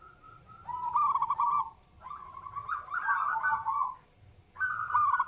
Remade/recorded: recorded